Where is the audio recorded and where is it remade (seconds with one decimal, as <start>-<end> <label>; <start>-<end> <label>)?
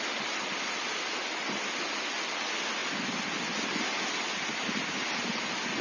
0.0-5.8 recorded